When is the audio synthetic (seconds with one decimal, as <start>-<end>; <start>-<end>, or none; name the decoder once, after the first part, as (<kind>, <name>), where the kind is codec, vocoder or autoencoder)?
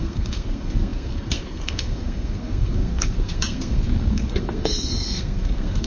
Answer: 0.0-5.9 (codec, SNAC)